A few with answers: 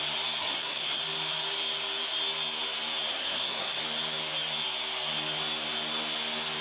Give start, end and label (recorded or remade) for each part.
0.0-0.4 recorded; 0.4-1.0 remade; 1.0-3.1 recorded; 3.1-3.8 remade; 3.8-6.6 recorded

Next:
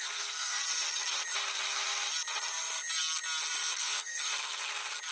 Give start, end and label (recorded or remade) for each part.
0.0-0.6 remade; 0.6-3.7 recorded; 3.7-4.3 remade; 4.3-5.1 recorded